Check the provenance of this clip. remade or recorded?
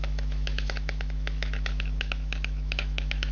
remade